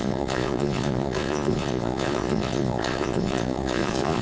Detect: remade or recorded remade